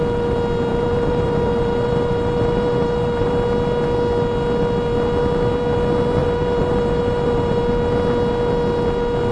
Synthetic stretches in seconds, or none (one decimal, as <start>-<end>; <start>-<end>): 0.7-3.3; 6.2-7.6